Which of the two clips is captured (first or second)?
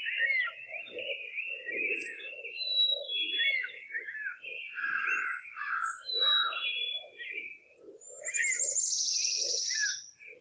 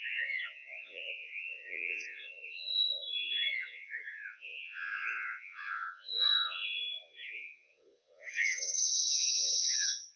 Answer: first